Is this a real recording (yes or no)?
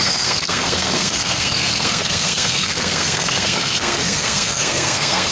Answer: no